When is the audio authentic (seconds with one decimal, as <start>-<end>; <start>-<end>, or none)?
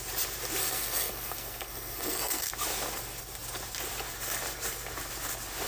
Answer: 0.0-0.6; 2.5-5.7